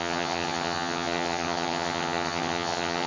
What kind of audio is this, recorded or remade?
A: remade